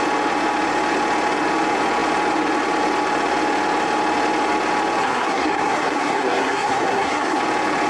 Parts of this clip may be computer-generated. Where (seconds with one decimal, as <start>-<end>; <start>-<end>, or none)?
5.0-7.4